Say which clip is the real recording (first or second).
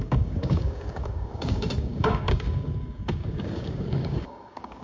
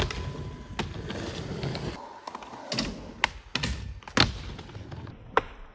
second